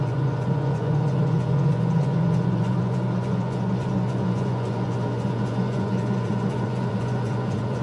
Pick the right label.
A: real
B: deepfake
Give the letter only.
B